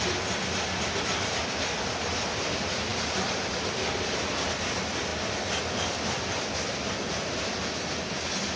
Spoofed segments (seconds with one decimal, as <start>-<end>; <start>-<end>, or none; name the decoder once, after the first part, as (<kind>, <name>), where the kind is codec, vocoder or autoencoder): none

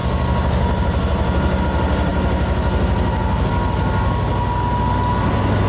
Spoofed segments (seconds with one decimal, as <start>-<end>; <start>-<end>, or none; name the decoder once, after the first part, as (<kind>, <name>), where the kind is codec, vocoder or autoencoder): none

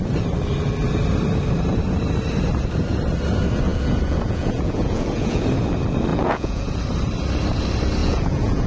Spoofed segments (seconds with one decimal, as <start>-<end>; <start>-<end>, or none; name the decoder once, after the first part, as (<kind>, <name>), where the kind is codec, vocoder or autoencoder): 3.7-5.4 (vocoder, Vocos); 6.1-6.8; 8.0-8.7

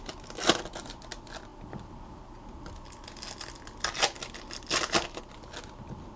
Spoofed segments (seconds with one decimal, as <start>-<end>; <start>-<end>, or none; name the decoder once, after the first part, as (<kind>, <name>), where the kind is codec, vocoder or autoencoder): none